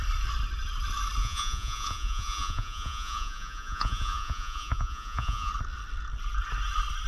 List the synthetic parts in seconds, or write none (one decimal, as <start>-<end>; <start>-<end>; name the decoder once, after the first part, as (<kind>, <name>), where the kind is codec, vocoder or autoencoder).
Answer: 1.2-5.5 (vocoder, Vocos)